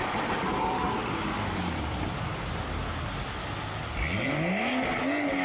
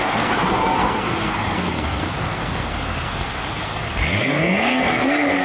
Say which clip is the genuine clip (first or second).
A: first